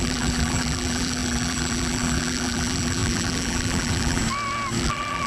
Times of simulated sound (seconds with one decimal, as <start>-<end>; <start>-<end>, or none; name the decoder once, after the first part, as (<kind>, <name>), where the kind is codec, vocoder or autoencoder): 0.0-4.2 (vocoder, BigVGAN v2); 4.8-5.3